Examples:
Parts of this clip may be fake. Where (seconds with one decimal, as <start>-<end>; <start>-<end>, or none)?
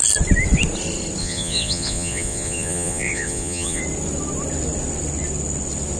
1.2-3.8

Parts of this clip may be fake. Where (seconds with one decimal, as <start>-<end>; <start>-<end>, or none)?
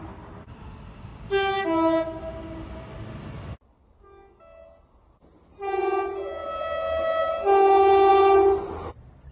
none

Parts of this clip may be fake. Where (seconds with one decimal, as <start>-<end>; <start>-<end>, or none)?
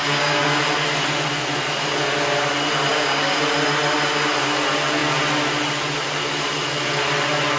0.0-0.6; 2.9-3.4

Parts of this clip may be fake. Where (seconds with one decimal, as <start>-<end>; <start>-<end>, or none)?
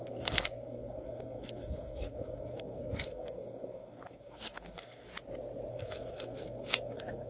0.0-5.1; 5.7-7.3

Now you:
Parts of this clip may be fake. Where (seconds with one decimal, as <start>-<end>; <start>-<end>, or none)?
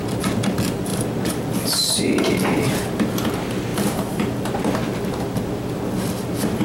3.7-4.5